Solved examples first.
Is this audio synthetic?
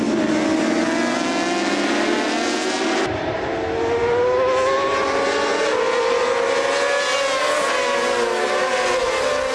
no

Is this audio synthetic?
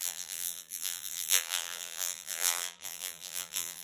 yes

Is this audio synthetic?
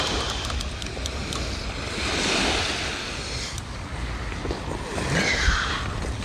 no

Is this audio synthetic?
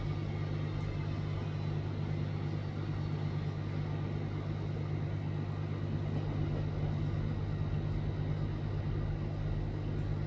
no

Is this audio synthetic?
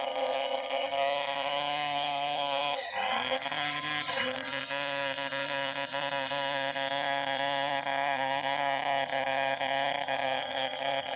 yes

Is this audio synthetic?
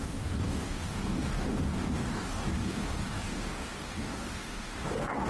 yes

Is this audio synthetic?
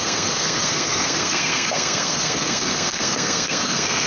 yes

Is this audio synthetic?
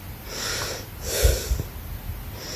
no